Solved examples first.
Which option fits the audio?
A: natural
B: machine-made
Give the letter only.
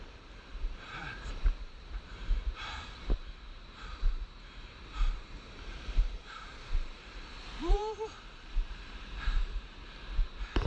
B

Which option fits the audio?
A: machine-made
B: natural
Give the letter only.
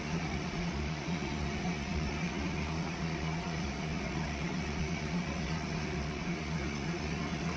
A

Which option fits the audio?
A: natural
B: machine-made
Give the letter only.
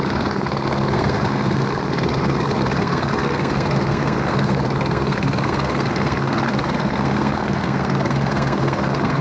B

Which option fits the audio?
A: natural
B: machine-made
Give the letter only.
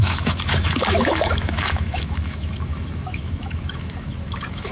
B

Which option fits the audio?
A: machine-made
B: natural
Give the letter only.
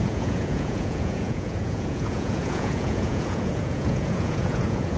A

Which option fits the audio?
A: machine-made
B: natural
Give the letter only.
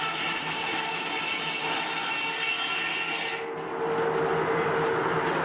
B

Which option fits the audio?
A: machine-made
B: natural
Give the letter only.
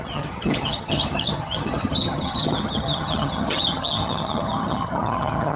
A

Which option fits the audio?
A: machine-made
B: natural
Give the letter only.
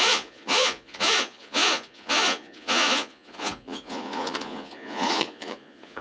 A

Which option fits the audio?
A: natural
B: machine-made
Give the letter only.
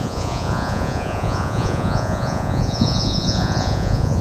B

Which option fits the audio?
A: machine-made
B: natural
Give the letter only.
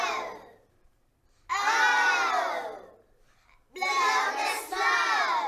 A